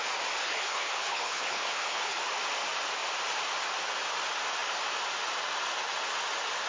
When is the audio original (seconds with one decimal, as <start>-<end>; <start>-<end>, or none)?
0.0-0.4; 2.2-6.7